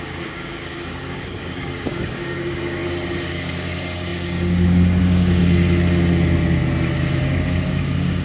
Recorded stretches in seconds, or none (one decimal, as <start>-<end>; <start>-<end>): 2.8-3.3; 5.4-7.2

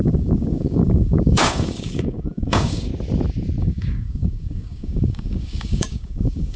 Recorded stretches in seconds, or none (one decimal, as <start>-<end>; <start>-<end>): 2.9-3.6

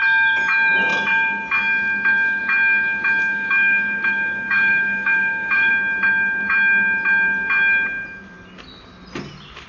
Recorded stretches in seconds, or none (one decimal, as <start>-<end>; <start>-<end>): 0.0-3.3; 5.7-9.7

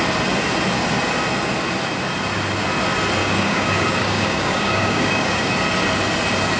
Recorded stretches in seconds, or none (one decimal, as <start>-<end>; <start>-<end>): 0.0-3.2; 5.5-6.6